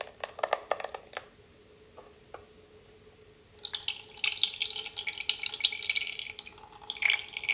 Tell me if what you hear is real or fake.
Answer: real